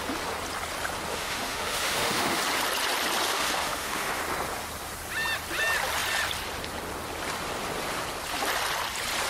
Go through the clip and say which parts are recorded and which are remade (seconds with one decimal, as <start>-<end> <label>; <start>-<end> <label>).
0.0-1.1 recorded; 1.1-2.4 remade; 2.4-3.3 recorded; 3.3-4.2 remade; 4.2-9.3 recorded

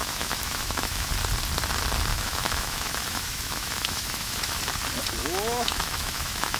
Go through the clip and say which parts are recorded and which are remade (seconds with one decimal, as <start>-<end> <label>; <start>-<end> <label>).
0.0-1.1 remade; 1.1-2.1 recorded; 2.1-4.6 remade; 4.6-5.2 recorded; 5.2-6.6 remade

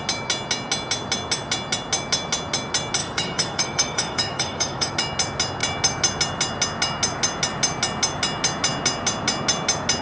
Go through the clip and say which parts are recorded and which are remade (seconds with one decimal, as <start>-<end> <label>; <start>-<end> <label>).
0.0-3.0 recorded; 3.0-4.9 remade; 4.9-10.0 recorded

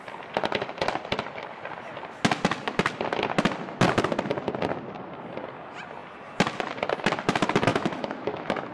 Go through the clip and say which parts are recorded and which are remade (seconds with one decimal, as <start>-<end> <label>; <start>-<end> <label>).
0.0-7.7 recorded; 7.7-8.7 remade

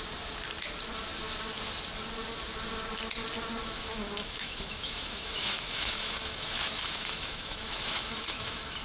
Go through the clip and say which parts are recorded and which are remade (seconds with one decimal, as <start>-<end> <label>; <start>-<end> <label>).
0.0-3.6 recorded; 3.6-8.8 remade